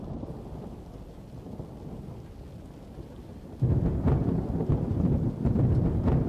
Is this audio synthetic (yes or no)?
no